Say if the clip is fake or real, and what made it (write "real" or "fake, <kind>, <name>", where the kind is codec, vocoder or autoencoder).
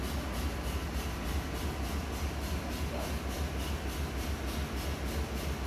real